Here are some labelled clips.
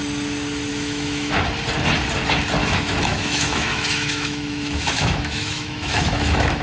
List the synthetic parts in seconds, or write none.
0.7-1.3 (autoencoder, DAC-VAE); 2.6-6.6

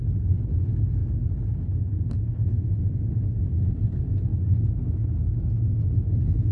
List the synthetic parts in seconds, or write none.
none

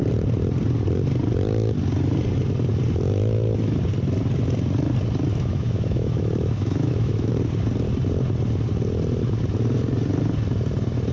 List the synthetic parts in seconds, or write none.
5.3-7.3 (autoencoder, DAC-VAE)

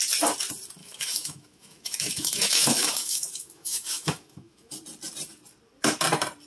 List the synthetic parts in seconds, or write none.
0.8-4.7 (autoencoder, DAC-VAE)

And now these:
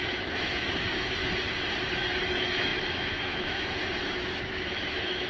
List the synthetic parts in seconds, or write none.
0.0-1.2 (autoencoder, DAC-VAE); 1.9-5.3

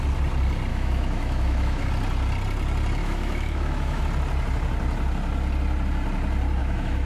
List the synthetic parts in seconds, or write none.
0.7-1.9 (autoencoder, DAC-VAE); 3.0-4.0; 6.6-7.1